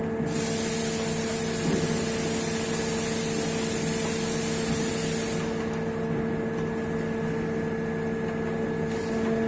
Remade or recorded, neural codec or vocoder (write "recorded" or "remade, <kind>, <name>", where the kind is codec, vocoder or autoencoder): recorded